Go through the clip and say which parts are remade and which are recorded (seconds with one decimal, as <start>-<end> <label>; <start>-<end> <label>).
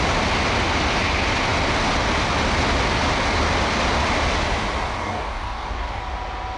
0.0-5.0 recorded; 5.0-6.0 remade; 6.0-6.6 recorded